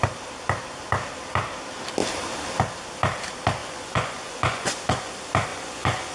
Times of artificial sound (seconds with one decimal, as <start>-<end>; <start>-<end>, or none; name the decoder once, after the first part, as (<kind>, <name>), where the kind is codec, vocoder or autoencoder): 3.6-5.1 (vocoder, Vocos); 5.5-6.1